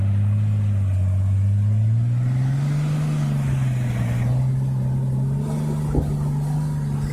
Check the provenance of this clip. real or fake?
real